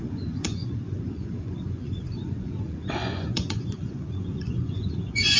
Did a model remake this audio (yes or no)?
yes